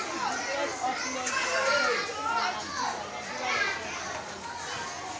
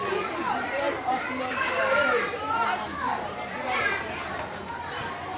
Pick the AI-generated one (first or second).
second